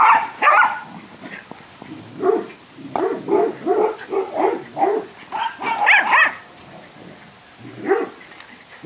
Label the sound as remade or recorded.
recorded